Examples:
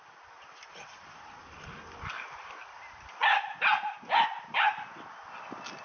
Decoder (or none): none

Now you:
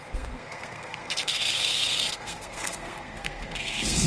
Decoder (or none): codec, SNAC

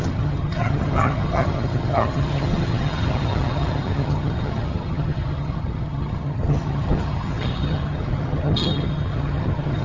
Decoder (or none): vocoder, HiFi-GAN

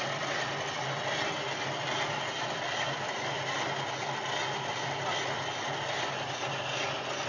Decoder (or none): none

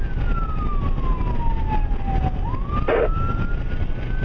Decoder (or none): none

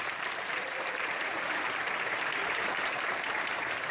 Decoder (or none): vocoder, BigVGAN v2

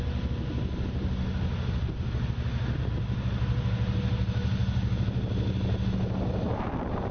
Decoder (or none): none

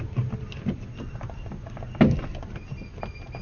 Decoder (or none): none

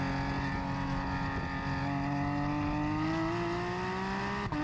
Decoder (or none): none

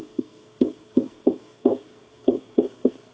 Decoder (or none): codec, SNAC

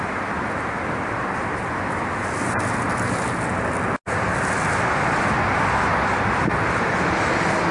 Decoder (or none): none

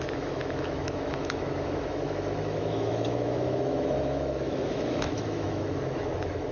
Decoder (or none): autoencoder, DAC-VAE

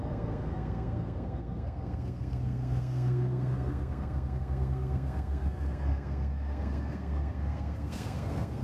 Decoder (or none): codec, SNAC